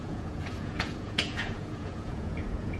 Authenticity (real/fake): fake